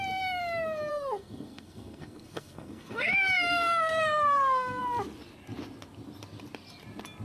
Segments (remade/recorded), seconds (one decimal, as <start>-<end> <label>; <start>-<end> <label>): 0.0-0.9 recorded; 0.9-4.8 remade; 4.8-7.2 recorded